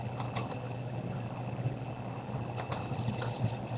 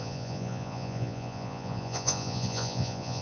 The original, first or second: first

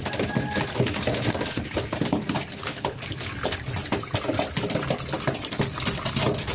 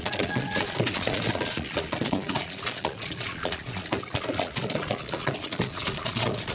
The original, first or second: first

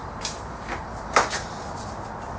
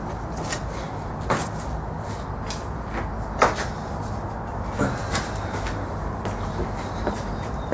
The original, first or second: second